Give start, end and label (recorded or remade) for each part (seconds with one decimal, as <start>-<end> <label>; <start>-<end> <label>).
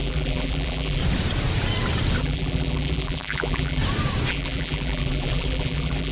0.0-1.0 remade; 1.0-2.2 recorded; 2.2-3.8 remade; 3.8-4.3 recorded; 4.3-6.1 remade